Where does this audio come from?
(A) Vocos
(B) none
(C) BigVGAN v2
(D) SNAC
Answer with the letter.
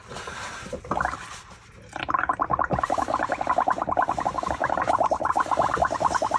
B